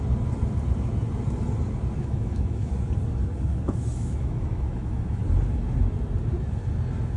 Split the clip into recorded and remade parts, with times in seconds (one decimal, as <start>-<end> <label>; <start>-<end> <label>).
0.0-2.0 recorded; 2.0-2.7 remade; 2.7-3.5 recorded; 3.5-5.2 remade; 5.2-7.2 recorded